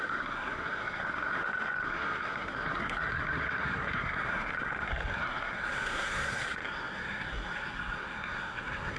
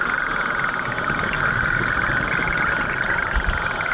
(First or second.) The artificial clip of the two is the first